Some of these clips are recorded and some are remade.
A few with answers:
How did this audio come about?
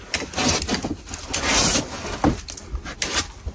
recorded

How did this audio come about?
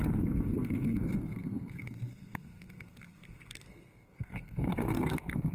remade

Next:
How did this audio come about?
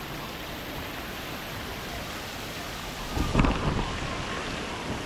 recorded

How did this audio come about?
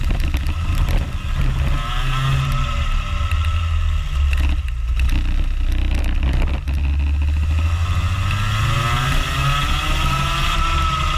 recorded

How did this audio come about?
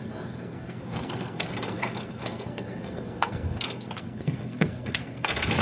remade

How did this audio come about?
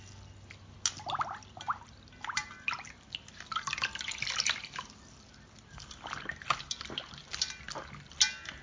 recorded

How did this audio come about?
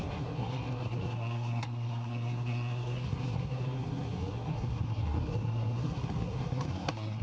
remade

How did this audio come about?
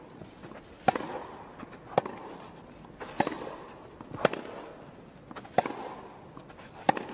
recorded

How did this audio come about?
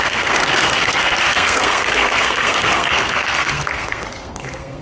remade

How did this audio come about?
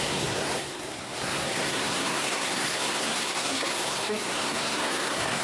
remade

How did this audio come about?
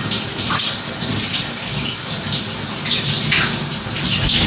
recorded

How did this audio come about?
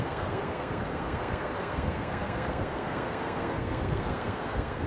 remade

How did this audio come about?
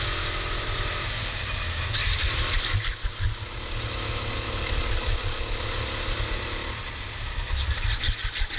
recorded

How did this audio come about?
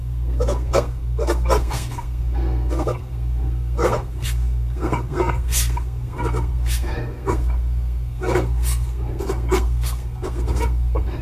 remade